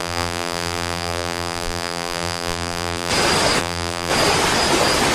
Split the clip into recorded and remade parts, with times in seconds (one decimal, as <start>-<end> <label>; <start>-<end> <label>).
0.0-3.1 remade; 3.1-3.6 recorded; 3.6-4.1 remade; 4.1-5.1 recorded